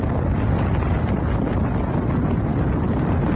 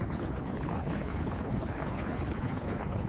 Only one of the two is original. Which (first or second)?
first